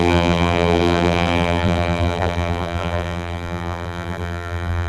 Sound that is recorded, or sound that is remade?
remade